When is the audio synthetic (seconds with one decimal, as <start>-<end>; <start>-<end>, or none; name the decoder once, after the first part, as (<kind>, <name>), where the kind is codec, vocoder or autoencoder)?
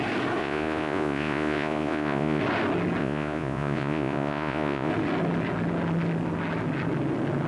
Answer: 0.4-2.4 (vocoder, Vocos); 3.0-4.9